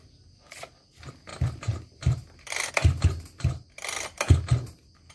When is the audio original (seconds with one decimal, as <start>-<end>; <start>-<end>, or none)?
0.0-5.1